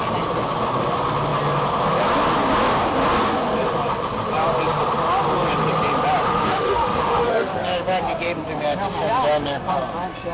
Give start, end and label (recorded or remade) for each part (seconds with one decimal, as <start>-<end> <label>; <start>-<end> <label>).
0.0-6.3 recorded; 6.3-7.5 remade; 7.5-10.3 recorded

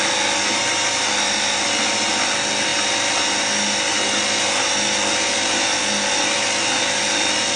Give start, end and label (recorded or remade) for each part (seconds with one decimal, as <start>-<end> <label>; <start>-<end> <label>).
0.0-7.6 recorded

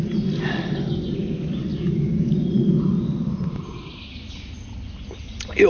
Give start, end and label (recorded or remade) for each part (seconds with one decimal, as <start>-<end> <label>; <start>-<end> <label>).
0.0-5.7 recorded

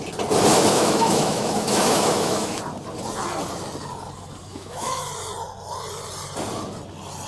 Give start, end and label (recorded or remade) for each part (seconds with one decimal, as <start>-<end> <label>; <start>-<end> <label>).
0.0-0.7 recorded; 0.7-2.6 remade; 2.6-4.5 recorded; 4.5-5.1 remade; 5.1-7.3 recorded

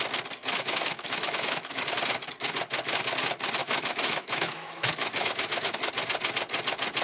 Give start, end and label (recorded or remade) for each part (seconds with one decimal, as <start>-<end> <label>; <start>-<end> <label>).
0.0-0.4 recorded; 0.4-1.8 remade; 1.8-3.6 recorded; 3.6-5.9 remade; 5.9-7.0 recorded